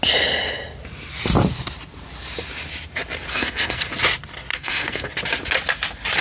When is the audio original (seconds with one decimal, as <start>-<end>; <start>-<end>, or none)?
0.0-3.3; 3.8-4.5; 5.1-6.2